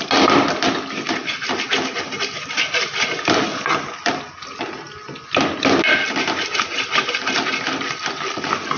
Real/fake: real